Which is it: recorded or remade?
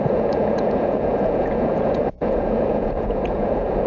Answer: remade